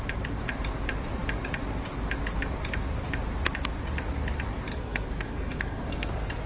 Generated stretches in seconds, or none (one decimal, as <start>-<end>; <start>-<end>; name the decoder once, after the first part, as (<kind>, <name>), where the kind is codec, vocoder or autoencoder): 4.7-6.1 (codec, SNAC)